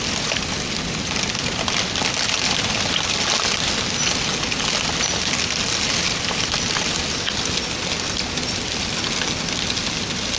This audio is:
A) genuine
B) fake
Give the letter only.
A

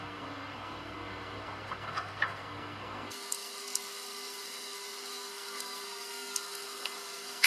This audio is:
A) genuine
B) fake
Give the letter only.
B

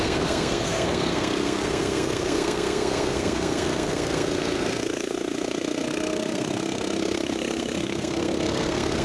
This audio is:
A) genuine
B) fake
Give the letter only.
B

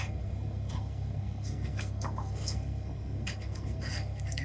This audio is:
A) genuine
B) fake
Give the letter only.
B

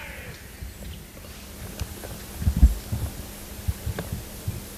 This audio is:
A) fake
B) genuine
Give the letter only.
B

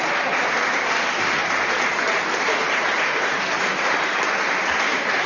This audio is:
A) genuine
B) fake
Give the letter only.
A